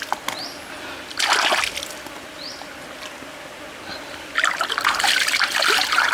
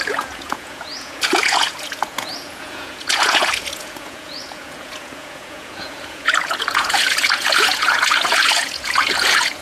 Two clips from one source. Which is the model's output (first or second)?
second